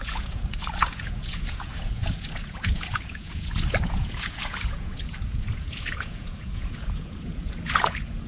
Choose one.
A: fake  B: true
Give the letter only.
A